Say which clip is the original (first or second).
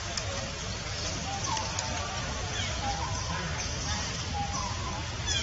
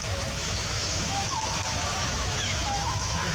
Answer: first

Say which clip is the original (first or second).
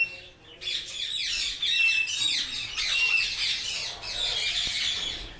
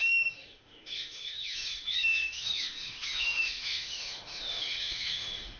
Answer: first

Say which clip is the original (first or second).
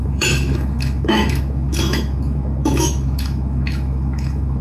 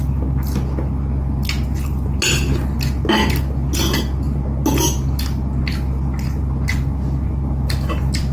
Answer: second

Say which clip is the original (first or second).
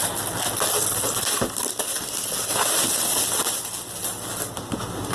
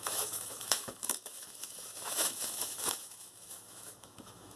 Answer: first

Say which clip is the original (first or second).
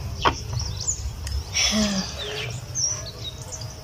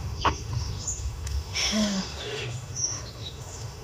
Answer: first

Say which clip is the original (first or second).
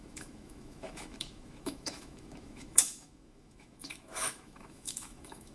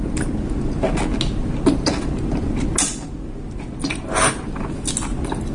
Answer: second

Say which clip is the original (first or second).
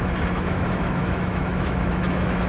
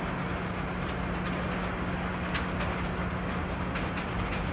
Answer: second